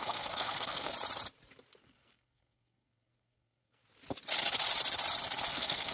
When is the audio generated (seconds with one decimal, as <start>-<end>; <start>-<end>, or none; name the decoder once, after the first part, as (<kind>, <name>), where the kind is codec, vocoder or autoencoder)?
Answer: 0.0-0.9 (codec, SNAC); 1.8-3.8; 5.5-5.9